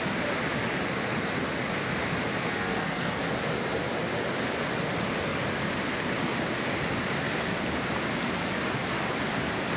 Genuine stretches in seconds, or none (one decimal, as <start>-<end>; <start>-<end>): 0.0-2.3; 3.2-9.8